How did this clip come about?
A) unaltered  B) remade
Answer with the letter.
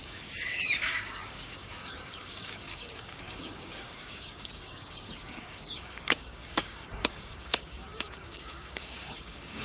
B